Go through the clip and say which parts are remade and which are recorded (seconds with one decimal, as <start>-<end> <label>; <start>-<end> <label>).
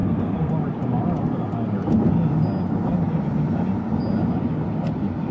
0.0-0.5 remade; 0.5-5.3 recorded